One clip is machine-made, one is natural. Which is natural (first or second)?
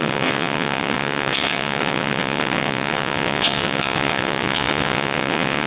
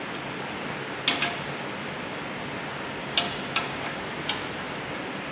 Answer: second